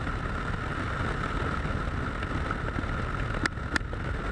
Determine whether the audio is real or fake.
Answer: real